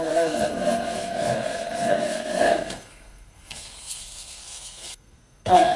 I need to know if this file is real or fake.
fake